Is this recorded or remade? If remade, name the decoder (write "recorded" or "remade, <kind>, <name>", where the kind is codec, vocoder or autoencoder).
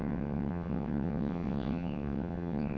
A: remade, vocoder, WaveNeXt